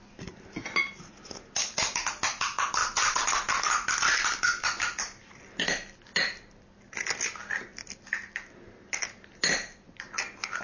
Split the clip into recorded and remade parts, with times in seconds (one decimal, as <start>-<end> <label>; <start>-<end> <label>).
0.0-10.6 recorded